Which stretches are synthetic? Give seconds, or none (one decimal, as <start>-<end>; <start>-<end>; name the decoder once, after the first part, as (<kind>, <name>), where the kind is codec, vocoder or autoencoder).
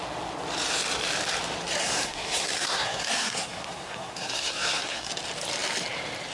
1.8-5.1 (codec, SNAC)